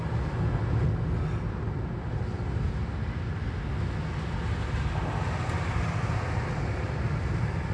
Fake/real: real